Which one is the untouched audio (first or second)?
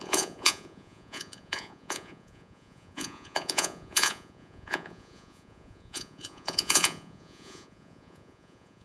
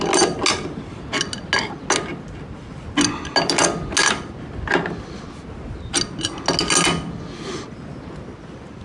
second